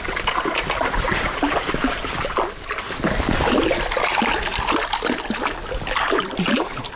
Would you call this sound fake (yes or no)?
no